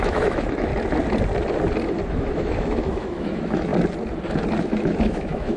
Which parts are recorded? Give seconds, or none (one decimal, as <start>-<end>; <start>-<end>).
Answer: 0.7-2.1; 3.7-4.6